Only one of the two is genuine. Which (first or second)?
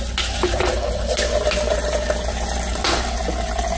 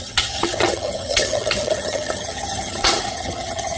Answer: first